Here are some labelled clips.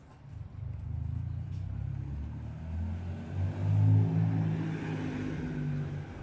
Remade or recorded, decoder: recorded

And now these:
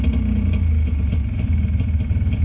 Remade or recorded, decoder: recorded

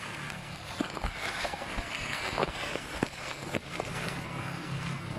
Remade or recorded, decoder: remade, codec, SNAC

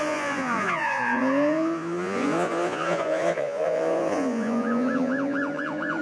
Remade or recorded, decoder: remade, vocoder, Vocos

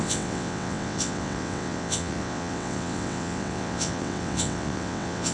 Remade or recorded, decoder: remade, vocoder, WaveNeXt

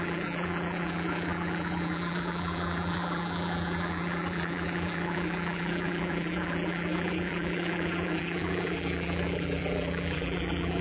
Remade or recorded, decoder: remade, vocoder, BigVGAN v2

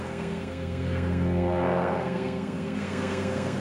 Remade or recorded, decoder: remade, codec, SNAC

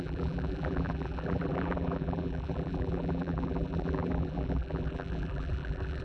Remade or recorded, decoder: remade, vocoder, BigVGAN v2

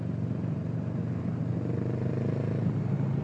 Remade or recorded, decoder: recorded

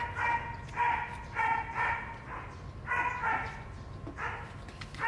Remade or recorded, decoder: recorded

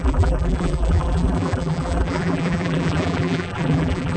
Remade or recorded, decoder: remade, vocoder, BigVGAN v2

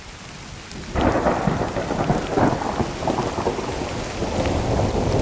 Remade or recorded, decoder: recorded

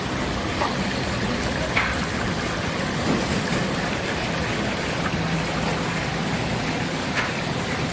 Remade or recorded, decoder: recorded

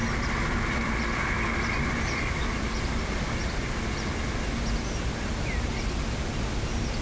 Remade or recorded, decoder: recorded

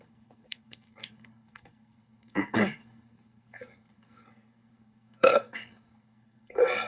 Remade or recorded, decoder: remade, codec, SNAC